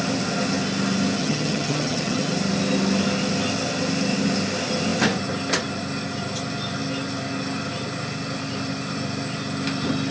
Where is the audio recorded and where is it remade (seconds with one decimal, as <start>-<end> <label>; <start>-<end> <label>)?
0.0-1.2 recorded; 1.2-2.2 remade; 2.2-10.1 recorded